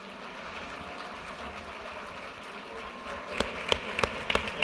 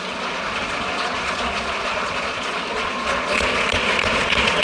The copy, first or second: second